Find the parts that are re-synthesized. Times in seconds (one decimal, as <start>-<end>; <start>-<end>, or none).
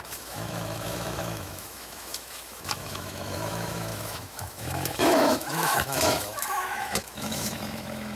0.0-8.2